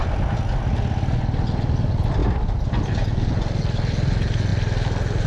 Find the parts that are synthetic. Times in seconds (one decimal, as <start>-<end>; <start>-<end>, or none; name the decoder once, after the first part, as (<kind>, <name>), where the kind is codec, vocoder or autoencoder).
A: none